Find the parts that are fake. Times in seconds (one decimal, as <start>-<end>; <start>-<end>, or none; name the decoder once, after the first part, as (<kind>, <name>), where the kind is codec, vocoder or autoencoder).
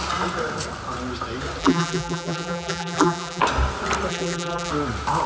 1.6-3.4 (vocoder, BigVGAN v2); 4.1-4.7